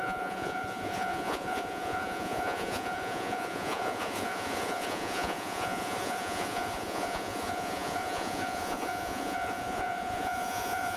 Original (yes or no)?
no